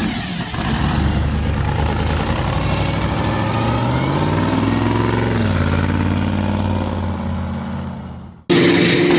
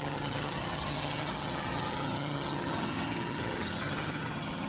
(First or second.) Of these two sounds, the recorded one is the first